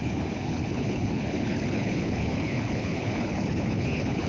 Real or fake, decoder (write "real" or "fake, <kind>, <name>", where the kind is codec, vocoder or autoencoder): fake, codec, HILCodec